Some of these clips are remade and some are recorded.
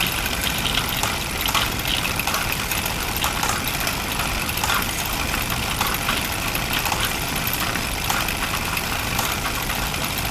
remade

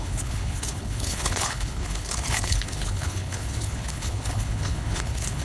remade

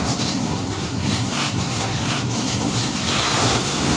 remade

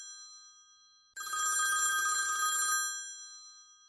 recorded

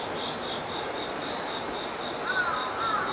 recorded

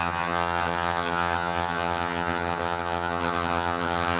remade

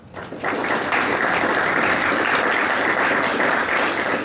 recorded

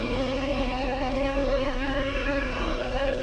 remade